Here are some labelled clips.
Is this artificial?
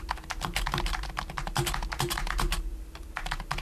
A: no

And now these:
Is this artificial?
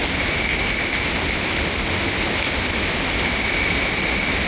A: no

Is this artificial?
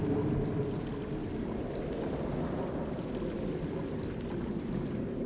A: no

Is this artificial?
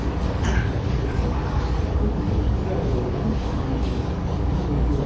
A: yes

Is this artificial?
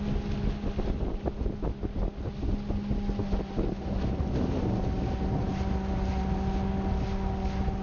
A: no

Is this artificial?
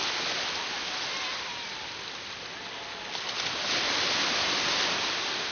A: no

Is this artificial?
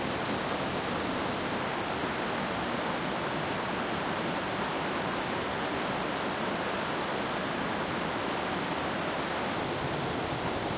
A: no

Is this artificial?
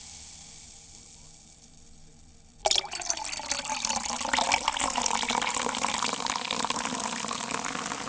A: no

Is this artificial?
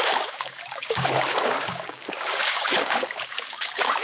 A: yes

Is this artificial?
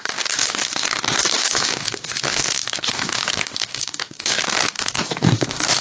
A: yes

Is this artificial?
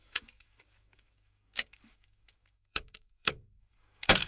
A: yes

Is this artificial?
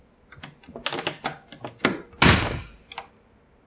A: no